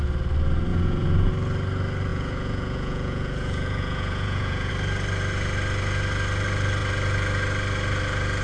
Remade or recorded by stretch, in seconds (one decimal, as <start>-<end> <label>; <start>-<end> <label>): 0.0-0.7 recorded; 0.7-1.3 remade; 1.3-2.1 recorded; 2.1-4.7 remade; 4.7-8.4 recorded